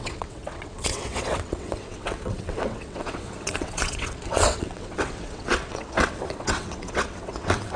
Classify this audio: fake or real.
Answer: fake